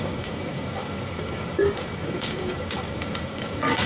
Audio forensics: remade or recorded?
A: remade